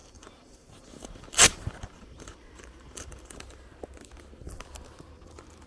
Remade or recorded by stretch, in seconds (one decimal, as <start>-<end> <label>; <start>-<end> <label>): 0.0-3.4 remade; 3.4-5.7 recorded